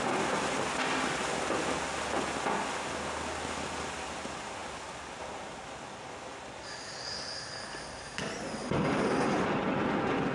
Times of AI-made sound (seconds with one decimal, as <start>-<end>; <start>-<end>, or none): none